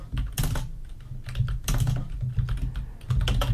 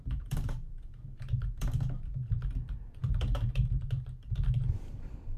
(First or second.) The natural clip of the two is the first